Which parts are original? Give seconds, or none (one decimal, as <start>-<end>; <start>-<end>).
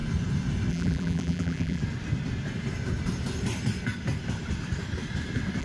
0.0-0.7; 1.8-5.6